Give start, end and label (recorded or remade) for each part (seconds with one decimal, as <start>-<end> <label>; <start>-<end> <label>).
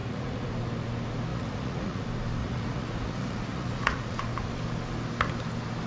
0.0-0.5 remade; 0.5-1.3 recorded; 1.3-2.0 remade; 2.0-2.4 recorded; 2.4-4.2 remade; 4.2-5.9 recorded